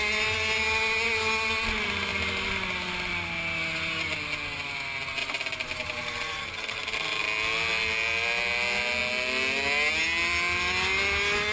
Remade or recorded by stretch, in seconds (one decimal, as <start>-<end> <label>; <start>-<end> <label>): 0.0-11.5 recorded